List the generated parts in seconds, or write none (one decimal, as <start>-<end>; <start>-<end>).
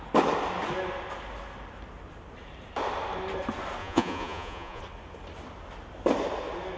3.8-4.8